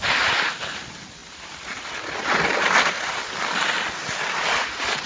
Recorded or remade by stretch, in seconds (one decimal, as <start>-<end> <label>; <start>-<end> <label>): 0.0-5.1 recorded